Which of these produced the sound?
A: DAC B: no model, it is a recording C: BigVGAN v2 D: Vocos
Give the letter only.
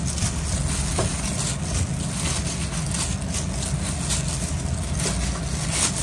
B